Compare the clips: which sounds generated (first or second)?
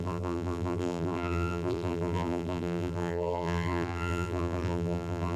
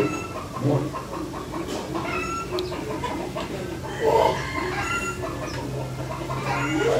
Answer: first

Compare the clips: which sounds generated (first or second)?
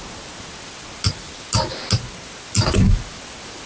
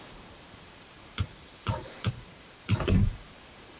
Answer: second